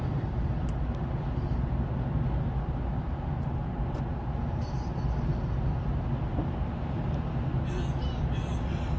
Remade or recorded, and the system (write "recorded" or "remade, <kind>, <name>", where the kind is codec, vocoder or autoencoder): recorded